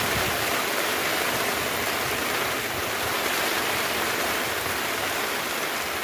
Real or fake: real